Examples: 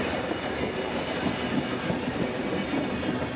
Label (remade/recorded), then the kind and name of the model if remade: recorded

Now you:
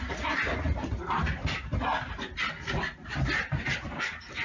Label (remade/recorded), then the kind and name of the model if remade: recorded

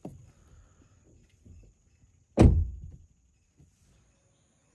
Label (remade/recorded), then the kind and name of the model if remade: recorded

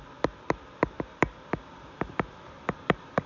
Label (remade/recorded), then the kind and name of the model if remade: recorded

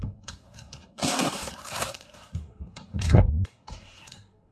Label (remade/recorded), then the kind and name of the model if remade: remade, codec, SNAC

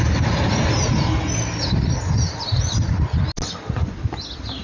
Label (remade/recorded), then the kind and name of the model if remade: recorded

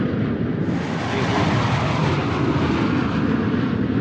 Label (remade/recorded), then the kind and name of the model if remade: recorded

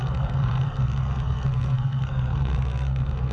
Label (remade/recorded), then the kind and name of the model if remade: remade, codec, SNAC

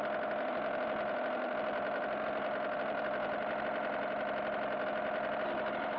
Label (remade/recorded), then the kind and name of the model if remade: recorded